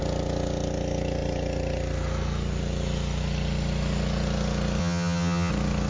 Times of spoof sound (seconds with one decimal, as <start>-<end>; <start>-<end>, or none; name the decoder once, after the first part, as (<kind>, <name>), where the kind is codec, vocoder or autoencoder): 4.8-5.5 (vocoder, HiFi-GAN)